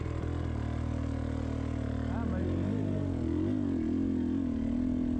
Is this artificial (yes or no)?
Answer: no